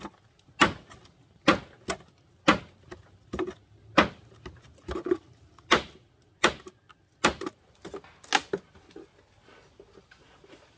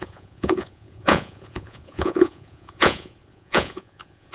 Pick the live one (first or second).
first